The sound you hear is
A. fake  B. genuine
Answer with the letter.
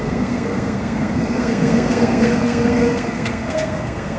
A